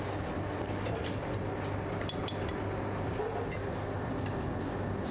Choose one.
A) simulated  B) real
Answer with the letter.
B